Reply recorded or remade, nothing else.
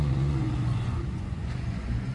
remade